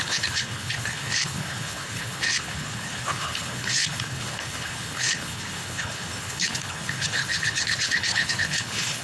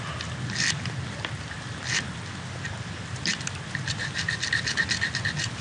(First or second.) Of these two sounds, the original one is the second